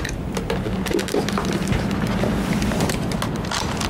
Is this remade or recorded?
recorded